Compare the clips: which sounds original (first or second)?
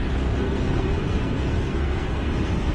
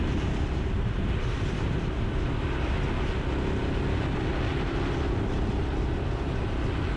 second